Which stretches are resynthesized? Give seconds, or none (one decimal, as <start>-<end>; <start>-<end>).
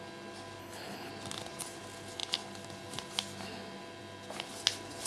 0.6-1.1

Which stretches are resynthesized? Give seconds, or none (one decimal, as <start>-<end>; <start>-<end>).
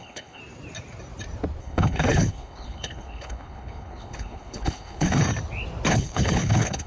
0.0-0.4; 1.6-5.2; 5.9-6.9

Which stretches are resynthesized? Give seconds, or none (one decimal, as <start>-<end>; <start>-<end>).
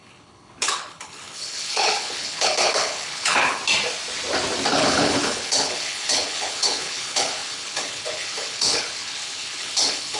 0.0-3.6; 4.7-10.2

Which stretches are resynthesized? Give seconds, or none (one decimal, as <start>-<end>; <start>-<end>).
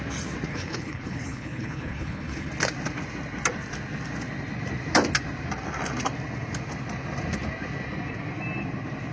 0.5-2.5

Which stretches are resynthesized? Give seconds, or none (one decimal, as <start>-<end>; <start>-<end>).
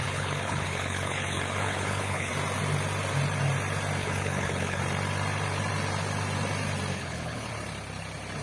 0.0-2.3; 4.0-4.8; 6.9-7.5